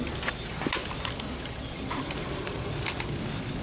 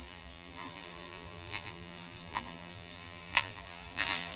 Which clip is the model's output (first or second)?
second